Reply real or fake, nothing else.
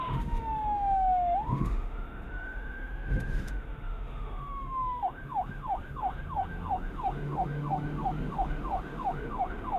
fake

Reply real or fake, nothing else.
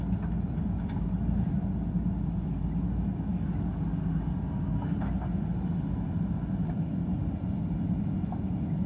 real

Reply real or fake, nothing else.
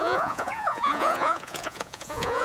fake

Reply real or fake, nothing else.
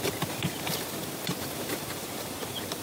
fake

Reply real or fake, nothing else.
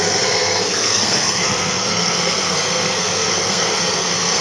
fake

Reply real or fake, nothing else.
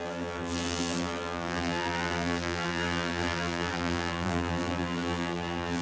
fake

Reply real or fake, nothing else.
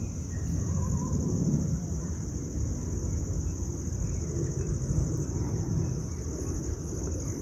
real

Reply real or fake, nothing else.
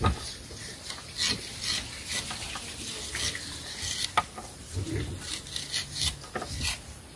real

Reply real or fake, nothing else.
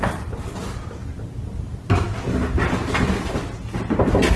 real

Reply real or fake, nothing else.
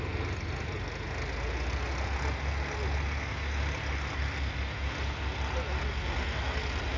real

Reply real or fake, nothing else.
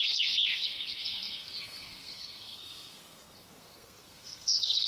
fake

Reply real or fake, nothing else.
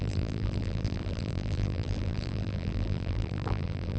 fake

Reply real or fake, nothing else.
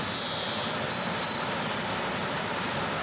real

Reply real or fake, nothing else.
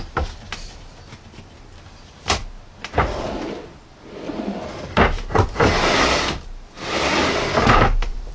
real